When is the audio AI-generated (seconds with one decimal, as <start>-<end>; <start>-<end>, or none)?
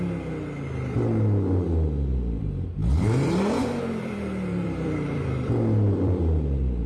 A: 2.8-6.2